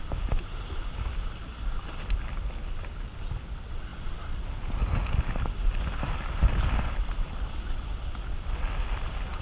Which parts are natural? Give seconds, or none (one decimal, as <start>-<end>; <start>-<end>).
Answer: 0.0-9.4